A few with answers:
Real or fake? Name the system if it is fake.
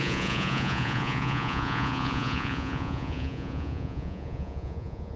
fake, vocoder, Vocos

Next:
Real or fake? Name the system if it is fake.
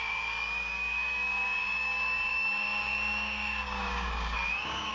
fake, codec, DAC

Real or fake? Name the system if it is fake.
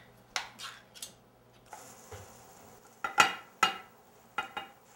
real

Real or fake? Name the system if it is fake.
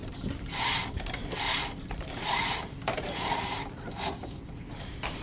fake, vocoder, BigVGAN v2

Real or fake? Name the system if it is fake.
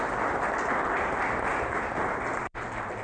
real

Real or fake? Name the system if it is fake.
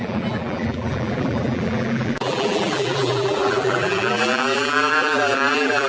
fake, vocoder, BigVGAN v2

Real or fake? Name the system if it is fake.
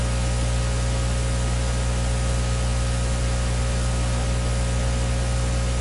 real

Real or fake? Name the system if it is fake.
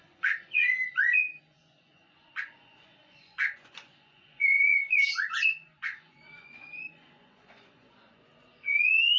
fake, vocoder, Vocos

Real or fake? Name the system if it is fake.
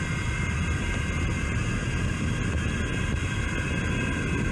real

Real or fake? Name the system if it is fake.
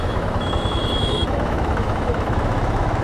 fake, autoencoder, DAC-VAE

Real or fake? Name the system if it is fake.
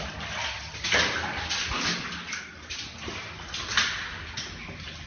real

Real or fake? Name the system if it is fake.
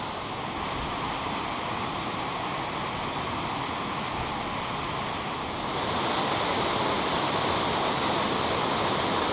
real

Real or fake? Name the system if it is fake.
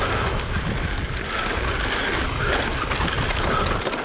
real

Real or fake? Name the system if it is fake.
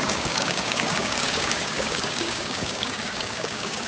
fake, codec, DAC